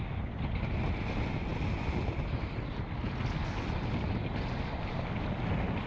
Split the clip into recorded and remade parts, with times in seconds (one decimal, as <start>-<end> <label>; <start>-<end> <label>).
0.0-5.9 recorded